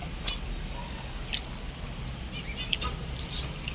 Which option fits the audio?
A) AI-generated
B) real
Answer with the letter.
B